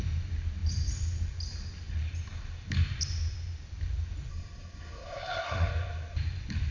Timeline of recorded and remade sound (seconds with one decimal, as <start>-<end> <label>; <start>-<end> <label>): 0.0-4.3 recorded; 4.3-5.7 remade; 5.7-6.7 recorded